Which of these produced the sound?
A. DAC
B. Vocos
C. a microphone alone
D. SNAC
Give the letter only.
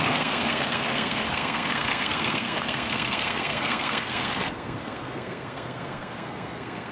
D